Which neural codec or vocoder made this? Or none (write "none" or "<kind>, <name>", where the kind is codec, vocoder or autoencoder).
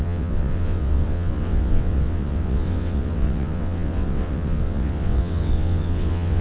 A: vocoder, WaveNeXt